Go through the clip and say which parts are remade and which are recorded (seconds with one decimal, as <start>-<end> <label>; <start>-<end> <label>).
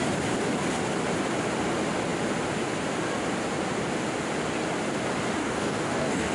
0.0-5.4 recorded; 5.4-6.3 remade